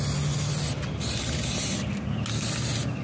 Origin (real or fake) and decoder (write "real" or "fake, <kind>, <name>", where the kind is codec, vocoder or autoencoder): real